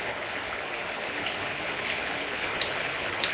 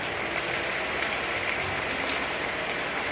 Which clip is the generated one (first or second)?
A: first